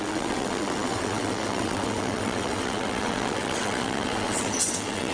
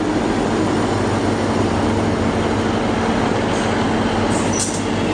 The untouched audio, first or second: second